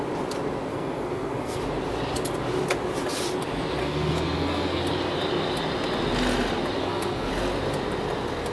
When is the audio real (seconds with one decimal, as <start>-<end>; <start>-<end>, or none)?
0.0-0.7; 1.6-3.8; 4.8-6.8; 7.3-8.5